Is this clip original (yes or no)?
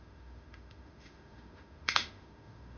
no